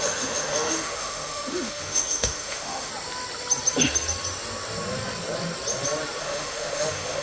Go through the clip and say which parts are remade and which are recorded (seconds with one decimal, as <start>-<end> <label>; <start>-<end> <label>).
0.0-2.9 remade; 2.9-6.2 recorded; 6.2-7.2 remade